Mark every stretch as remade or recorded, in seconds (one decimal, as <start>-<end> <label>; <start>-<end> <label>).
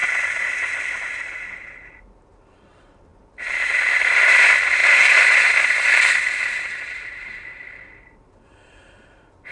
0.0-9.5 remade